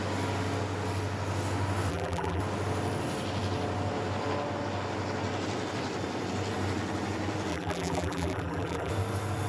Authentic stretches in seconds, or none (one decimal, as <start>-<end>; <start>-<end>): 0.0-1.9; 2.4-7.5; 8.9-9.5